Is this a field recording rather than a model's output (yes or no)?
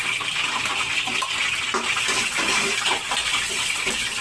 yes